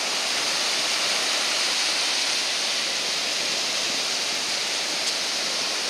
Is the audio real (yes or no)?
yes